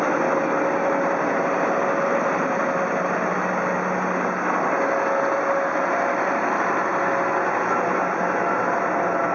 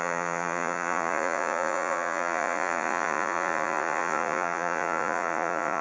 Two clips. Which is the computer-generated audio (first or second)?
second